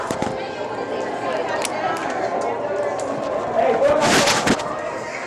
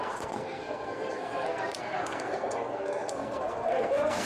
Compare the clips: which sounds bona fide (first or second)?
first